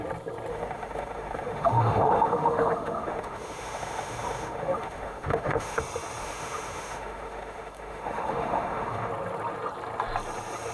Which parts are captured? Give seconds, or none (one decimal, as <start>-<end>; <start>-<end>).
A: 0.0-0.5; 5.8-6.2; 9.1-10.7